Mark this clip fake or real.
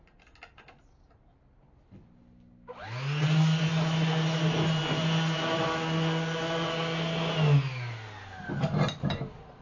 real